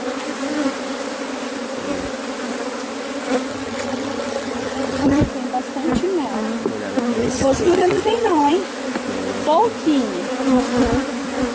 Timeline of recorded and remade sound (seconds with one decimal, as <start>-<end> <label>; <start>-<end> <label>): 0.0-3.5 recorded; 3.5-5.2 remade; 5.2-7.2 recorded; 7.2-8.5 remade; 8.5-11.5 recorded